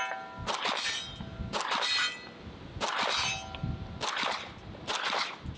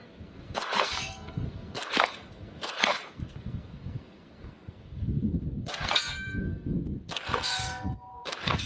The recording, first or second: first